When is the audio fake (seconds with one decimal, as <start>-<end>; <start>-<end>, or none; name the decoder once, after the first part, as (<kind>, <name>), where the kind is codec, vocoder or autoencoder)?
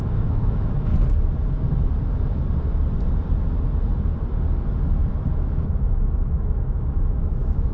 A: 0.0-0.9 (autoencoder, DAC-VAE); 5.3-7.7